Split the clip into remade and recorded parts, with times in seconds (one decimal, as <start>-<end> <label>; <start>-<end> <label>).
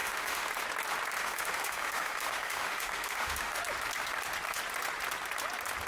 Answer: 0.0-0.5 remade; 0.5-1.2 recorded; 1.2-3.6 remade; 3.6-5.9 recorded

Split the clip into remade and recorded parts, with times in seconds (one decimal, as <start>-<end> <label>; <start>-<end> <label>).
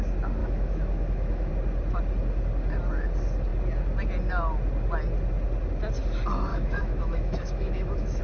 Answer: 0.0-0.4 recorded; 0.4-1.5 remade; 1.5-6.5 recorded; 6.5-8.2 remade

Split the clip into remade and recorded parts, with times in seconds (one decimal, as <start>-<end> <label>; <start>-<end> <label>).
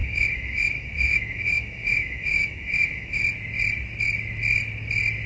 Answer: 0.0-3.2 remade; 3.2-5.3 recorded